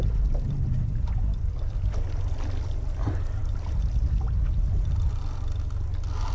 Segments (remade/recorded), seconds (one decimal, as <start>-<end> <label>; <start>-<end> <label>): 0.0-6.3 recorded